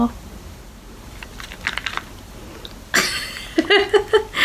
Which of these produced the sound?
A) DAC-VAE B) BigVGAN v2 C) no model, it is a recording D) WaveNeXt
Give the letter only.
C